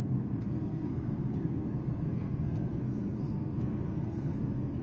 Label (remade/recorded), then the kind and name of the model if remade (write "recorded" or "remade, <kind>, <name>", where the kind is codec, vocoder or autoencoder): remade, codec, SNAC